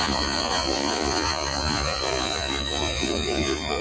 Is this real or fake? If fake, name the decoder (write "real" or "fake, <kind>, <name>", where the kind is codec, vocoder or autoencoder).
fake, vocoder, Vocos